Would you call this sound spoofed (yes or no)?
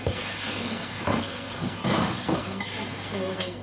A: yes